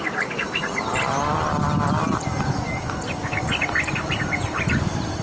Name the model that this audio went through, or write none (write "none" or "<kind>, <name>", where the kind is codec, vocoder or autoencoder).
none